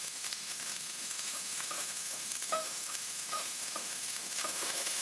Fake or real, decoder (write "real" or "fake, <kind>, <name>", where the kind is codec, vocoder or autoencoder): fake, autoencoder, DAC-VAE